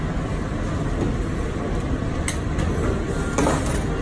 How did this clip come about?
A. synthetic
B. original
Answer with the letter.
B